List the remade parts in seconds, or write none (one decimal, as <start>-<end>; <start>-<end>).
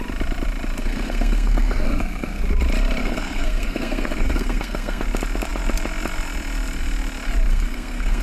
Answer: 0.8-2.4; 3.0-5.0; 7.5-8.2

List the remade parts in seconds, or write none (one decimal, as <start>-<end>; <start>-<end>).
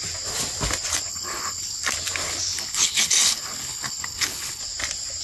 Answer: 1.1-1.8; 2.5-4.6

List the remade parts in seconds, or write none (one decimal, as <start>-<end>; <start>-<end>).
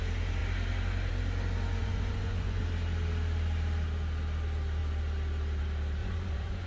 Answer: 1.8-2.6; 6.0-6.7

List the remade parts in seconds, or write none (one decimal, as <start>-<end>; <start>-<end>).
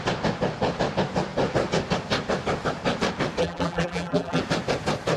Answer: 3.4-4.4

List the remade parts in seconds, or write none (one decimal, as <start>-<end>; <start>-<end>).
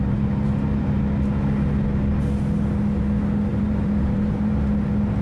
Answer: 0.0-1.0; 3.5-4.6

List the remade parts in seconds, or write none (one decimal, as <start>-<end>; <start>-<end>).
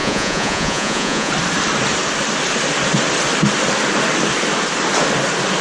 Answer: 0.0-1.3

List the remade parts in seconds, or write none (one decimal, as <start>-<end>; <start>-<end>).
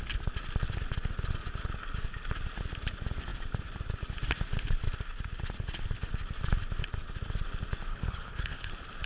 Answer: 7.9-8.7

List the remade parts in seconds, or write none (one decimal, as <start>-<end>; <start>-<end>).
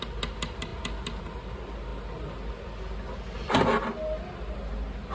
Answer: none